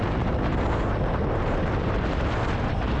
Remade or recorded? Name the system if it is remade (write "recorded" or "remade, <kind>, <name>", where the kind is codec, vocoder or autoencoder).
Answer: remade, vocoder, BigVGAN v2